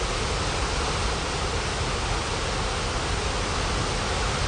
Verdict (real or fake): real